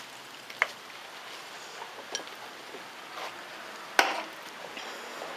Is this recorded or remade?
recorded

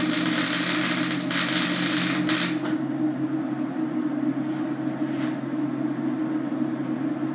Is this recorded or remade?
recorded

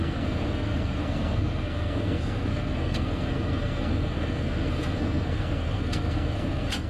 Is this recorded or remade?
remade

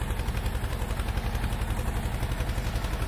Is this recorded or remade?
recorded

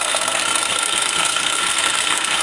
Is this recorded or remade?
remade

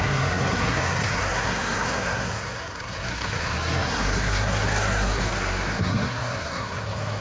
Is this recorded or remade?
remade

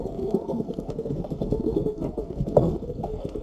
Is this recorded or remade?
remade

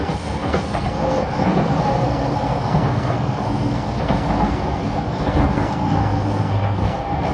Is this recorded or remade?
remade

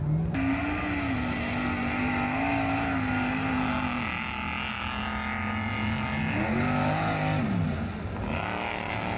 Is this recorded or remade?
recorded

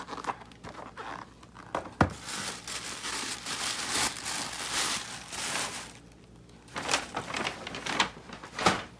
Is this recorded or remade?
recorded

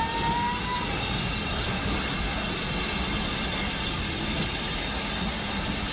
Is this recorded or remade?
recorded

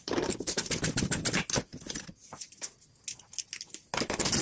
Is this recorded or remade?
recorded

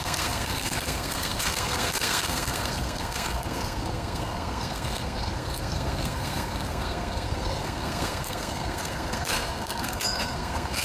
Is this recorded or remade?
remade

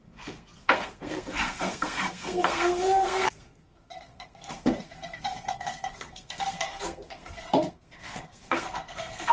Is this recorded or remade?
remade